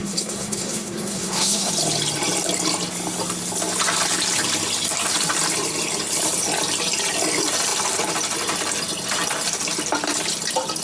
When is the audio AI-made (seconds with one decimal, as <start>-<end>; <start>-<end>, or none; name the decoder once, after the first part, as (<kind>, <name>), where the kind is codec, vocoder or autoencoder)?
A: 0.0-1.7 (codec, SNAC)